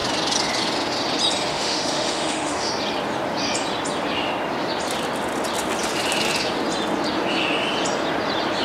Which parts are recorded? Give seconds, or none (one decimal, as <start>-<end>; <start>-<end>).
0.0-1.5; 2.7-8.6